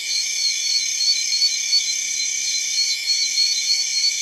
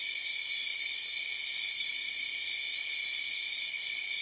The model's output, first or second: first